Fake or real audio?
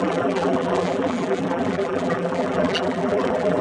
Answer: fake